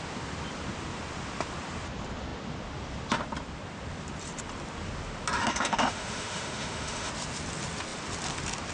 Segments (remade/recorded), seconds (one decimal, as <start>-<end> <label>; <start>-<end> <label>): 0.0-5.4 recorded; 5.4-7.1 remade; 7.1-8.7 recorded